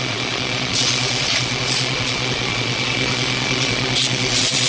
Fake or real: fake